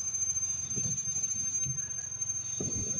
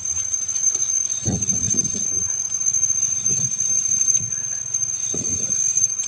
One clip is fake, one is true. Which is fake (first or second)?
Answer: second